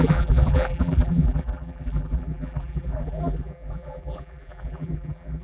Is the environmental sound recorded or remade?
remade